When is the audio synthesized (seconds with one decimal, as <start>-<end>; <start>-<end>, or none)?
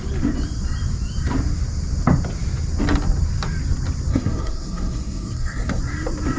4.1-5.8